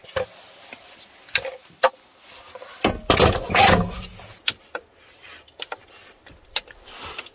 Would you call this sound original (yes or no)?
yes